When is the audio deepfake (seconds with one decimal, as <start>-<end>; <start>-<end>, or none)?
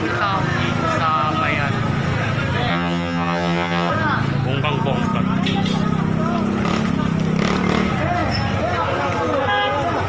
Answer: 2.7-3.9